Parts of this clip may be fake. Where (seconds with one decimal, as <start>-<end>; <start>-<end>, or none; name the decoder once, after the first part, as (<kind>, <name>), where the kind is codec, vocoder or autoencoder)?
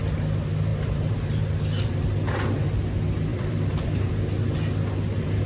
0.7-2.0 (vocoder, BigVGAN v2); 3.3-4.1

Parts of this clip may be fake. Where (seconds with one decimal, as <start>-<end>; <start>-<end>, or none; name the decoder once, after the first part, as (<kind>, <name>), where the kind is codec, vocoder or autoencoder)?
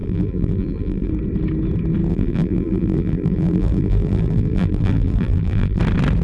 0.0-1.1 (vocoder, BigVGAN v2); 2.1-5.8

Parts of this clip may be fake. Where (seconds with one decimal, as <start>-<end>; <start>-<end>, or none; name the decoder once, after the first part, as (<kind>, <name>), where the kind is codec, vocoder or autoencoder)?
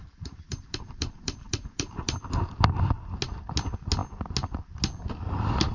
0.0-2.2 (vocoder, BigVGAN v2)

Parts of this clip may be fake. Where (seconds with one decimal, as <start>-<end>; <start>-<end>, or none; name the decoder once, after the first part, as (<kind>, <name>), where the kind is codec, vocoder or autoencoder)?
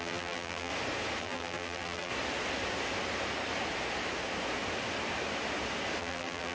0.0-0.7 (vocoder, BigVGAN v2); 1.2-2.1; 6.0-6.5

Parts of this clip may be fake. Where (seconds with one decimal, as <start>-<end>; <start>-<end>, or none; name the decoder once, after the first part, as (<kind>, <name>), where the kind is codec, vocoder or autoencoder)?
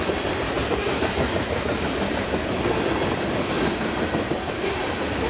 0.0-0.6 (vocoder, BigVGAN v2); 3.8-5.3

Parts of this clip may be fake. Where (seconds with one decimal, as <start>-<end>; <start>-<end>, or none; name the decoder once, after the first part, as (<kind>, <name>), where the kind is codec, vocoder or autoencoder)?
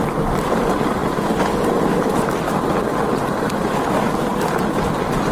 none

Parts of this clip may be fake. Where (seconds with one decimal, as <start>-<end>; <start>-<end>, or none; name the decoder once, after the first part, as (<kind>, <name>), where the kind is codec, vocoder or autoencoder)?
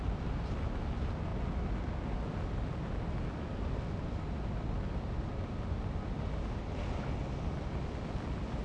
none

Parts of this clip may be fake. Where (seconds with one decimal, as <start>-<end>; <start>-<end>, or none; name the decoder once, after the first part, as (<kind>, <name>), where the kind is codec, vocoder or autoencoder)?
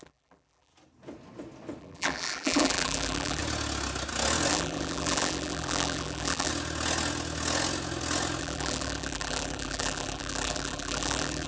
0.0-0.7 (vocoder, BigVGAN v2); 1.8-3.4; 4.5-6.5; 8.4-11.5